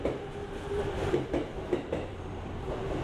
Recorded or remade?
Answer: remade